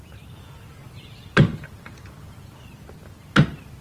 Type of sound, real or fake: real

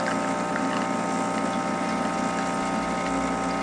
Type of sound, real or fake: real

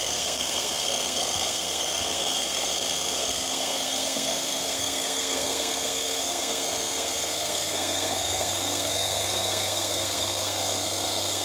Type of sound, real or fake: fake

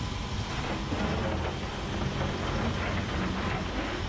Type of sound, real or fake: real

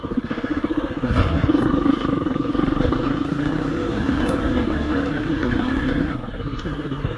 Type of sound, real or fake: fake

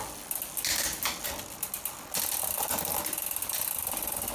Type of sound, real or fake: real